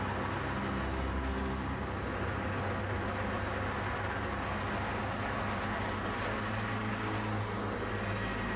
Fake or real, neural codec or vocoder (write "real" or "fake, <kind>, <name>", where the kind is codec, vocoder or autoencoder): real